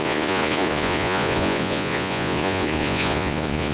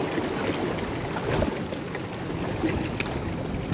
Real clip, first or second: second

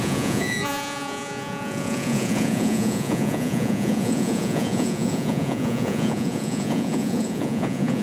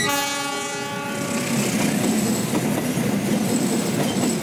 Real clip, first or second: second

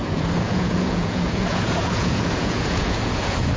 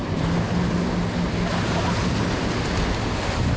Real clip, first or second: second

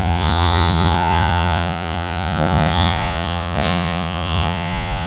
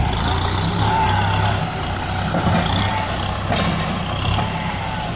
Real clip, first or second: second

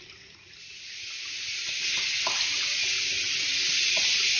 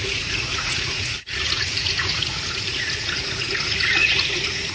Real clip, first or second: first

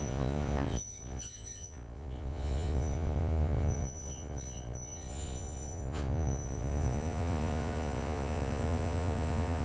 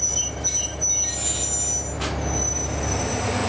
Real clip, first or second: second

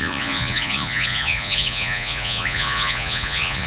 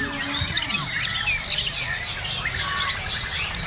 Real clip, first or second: second